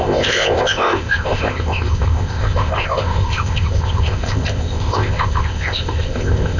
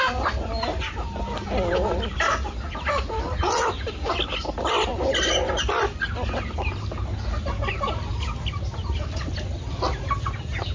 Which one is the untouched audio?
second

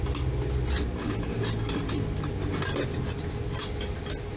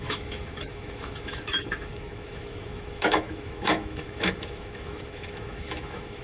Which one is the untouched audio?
first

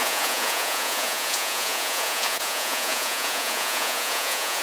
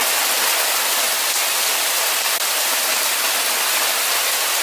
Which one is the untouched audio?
second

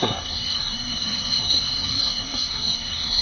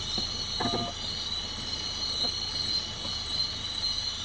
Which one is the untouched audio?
second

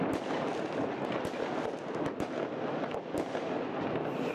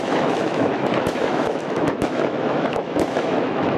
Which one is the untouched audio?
first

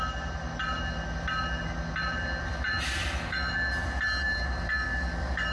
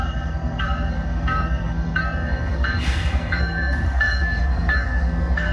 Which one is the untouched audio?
first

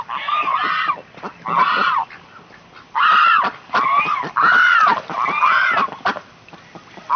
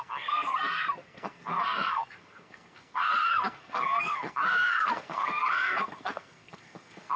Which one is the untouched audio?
first